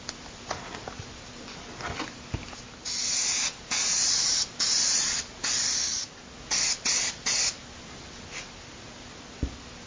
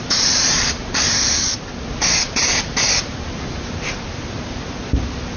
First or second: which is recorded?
first